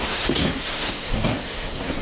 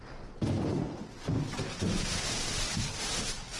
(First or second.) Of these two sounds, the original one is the second